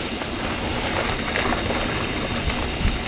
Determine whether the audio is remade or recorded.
recorded